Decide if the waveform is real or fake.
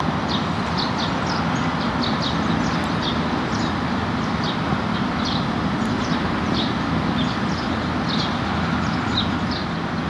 real